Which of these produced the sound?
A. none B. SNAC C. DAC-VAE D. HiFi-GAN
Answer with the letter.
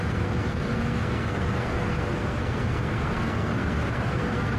B